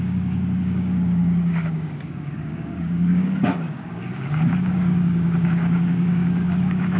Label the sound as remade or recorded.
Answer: remade